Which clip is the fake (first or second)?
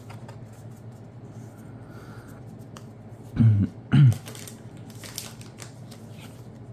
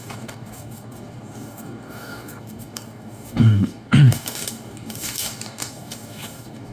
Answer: second